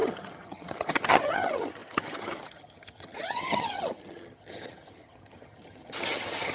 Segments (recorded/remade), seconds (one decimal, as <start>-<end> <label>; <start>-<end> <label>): 0.0-6.5 remade